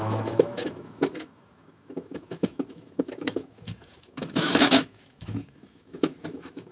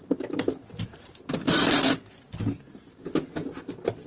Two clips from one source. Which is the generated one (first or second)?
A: first